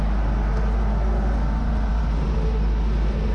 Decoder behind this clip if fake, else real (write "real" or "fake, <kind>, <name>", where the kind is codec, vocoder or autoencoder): real